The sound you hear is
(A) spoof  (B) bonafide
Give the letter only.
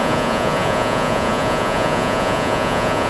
A